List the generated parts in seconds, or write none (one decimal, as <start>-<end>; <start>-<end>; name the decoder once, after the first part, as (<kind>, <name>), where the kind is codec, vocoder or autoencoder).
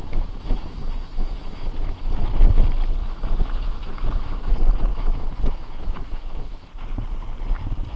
0.0-2.1 (autoencoder, DAC-VAE); 3.0-4.5; 4.9-6.8